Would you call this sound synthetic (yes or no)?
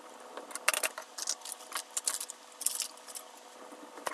no